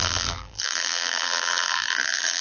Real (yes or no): no